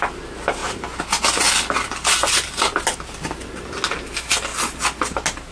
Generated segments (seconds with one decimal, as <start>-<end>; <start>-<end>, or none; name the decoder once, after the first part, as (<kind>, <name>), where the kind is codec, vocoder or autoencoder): none